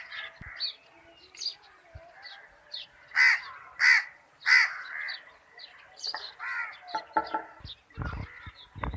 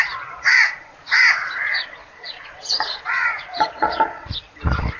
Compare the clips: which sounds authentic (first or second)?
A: first